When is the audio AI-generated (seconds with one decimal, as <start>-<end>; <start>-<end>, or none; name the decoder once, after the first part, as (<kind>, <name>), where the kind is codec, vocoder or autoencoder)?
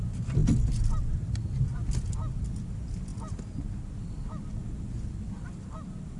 none